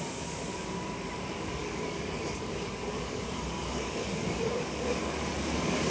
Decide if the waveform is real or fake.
fake